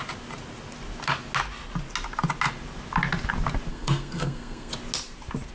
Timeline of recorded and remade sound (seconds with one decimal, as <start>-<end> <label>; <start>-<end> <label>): 0.0-3.7 recorded; 3.7-4.7 remade; 4.7-5.5 recorded